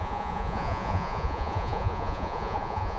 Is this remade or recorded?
remade